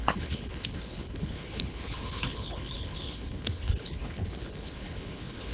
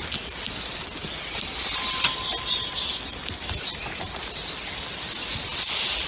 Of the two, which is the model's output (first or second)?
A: first